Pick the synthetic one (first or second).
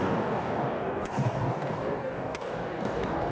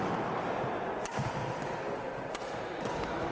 first